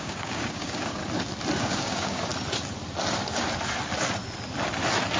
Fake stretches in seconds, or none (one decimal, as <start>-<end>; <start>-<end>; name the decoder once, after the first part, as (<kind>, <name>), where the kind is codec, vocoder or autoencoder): 0.0-1.0 (codec, DAC); 1.6-2.3